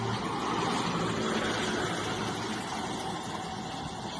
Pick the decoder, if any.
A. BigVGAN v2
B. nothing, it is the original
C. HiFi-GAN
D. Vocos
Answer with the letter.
B